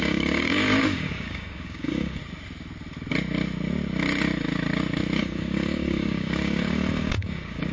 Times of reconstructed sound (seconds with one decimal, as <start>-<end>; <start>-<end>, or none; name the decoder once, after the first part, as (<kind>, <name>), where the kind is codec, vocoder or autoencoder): 0.0-2.2 (codec, DAC); 5.2-7.7

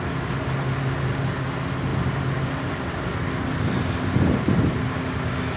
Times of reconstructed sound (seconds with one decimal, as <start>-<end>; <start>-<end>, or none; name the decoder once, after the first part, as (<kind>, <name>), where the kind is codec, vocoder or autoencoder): none

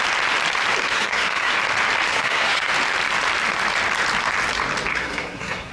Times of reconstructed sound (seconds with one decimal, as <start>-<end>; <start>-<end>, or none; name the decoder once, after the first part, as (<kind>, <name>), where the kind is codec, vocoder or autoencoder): 0.8-1.5 (codec, SNAC); 2.1-2.7; 4.9-5.7